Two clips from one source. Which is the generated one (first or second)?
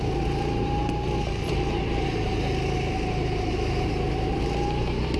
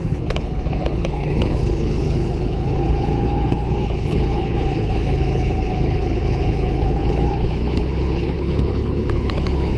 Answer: second